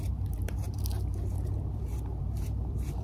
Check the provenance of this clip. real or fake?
fake